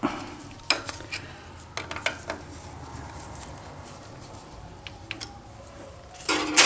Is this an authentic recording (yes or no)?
yes